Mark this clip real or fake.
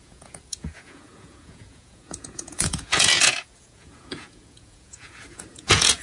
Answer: fake